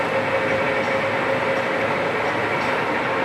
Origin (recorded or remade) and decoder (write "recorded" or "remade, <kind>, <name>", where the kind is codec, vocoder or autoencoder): recorded